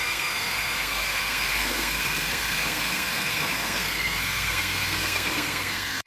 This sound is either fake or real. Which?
fake